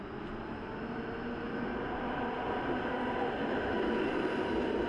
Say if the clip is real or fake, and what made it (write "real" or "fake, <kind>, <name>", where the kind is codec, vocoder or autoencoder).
real